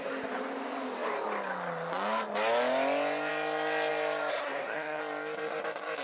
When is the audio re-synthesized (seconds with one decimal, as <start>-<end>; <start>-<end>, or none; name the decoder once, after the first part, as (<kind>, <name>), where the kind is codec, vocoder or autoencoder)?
4.3-5.0 (codec, SNAC)